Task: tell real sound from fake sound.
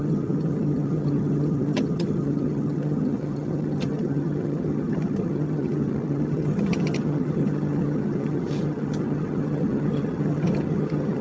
fake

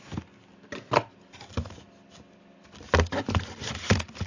real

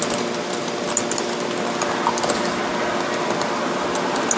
real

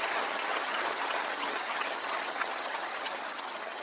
fake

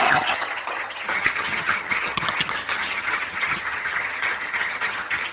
fake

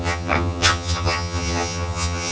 fake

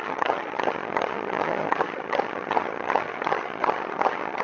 fake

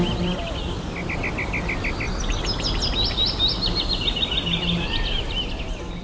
real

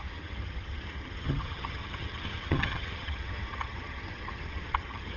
fake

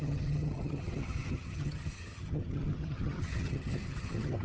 fake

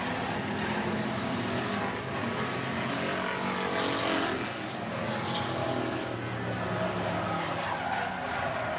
real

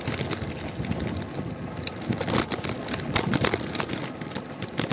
real